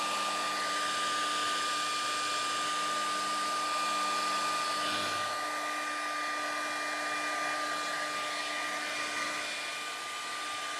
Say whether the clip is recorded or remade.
recorded